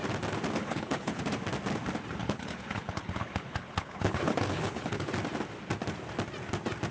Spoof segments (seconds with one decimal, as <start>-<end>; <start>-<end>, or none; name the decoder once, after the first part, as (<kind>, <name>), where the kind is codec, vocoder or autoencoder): 0.6-1.2 (codec, HILCodec); 2.2-5.1